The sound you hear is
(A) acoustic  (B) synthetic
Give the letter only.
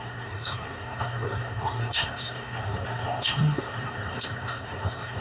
B